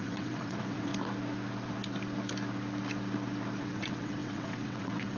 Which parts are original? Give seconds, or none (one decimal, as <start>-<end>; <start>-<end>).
0.9-3.6

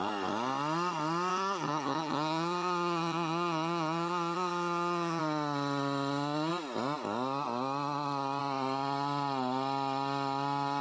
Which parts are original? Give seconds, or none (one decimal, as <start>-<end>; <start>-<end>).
0.0-1.3; 5.2-10.8